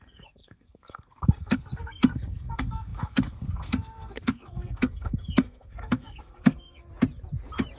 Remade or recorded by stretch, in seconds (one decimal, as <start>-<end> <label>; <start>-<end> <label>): 0.0-6.8 remade; 6.8-7.8 recorded